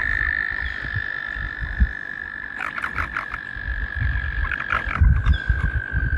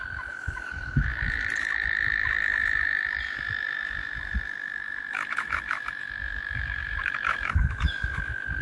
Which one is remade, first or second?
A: second